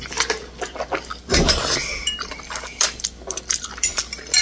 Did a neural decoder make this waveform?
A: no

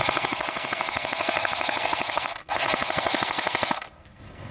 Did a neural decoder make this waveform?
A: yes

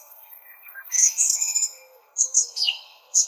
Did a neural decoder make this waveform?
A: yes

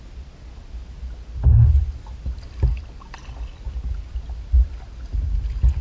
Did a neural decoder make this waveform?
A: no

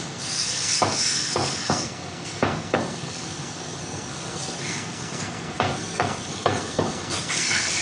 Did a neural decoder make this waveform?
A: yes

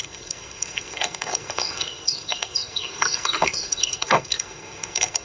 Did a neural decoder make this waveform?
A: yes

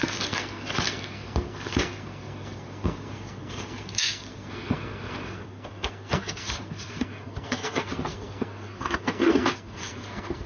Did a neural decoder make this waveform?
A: yes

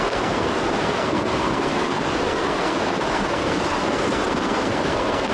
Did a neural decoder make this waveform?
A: yes